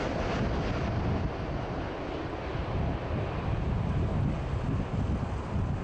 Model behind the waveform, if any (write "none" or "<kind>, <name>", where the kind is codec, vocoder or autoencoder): none